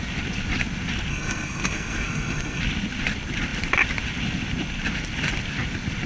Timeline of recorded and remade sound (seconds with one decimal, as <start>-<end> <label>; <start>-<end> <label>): 0.0-1.1 recorded; 1.1-2.6 remade; 2.6-6.1 recorded